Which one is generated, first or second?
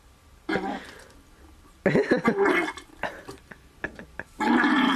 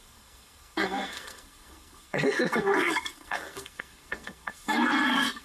second